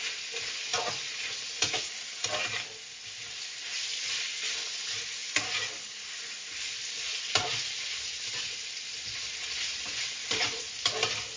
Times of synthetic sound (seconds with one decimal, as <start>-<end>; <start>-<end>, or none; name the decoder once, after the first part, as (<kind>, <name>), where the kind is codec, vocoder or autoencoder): none